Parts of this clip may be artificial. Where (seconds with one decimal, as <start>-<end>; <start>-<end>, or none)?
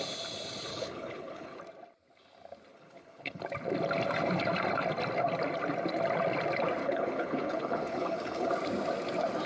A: 0.7-1.6; 2.7-3.4; 6.8-8.5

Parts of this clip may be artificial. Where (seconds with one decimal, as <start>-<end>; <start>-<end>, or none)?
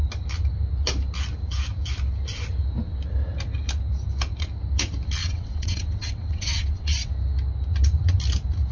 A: 5.2-7.1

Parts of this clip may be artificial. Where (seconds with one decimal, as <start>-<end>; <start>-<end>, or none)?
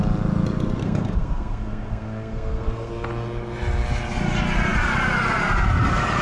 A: 0.8-2.9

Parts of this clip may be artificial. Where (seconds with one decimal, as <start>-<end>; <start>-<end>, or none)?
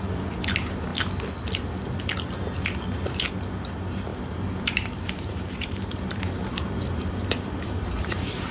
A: 0.0-0.9; 3.3-8.5